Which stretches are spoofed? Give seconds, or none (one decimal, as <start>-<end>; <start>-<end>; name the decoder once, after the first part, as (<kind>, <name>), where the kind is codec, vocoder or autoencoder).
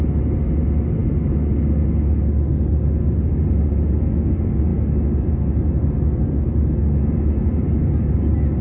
none